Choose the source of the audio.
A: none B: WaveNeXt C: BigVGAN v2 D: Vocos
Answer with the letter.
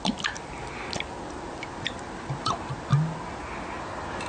A